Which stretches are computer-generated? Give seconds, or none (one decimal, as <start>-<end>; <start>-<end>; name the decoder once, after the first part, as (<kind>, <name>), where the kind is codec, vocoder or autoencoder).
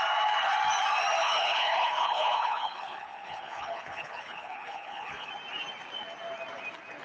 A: 1.2-5.3 (codec, HILCodec)